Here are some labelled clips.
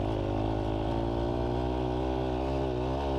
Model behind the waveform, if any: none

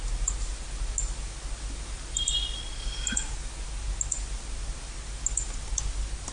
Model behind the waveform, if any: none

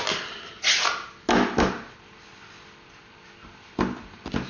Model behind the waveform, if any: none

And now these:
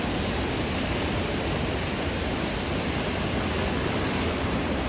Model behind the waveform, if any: none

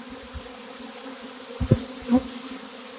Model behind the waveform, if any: none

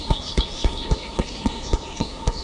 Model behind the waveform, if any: codec, SNAC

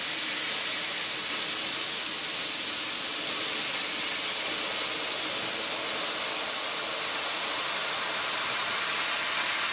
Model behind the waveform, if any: none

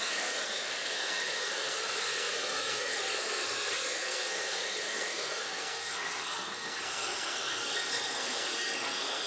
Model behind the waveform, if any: codec, SNAC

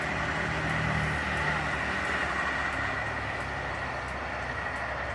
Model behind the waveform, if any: none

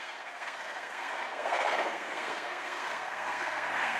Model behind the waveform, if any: codec, SNAC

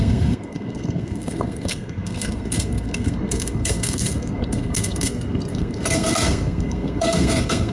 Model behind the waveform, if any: codec, SNAC